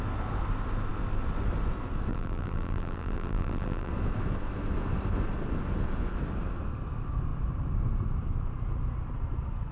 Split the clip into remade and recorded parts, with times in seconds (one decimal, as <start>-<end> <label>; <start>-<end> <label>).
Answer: 0.0-2.1 recorded; 2.1-3.9 remade; 3.9-9.7 recorded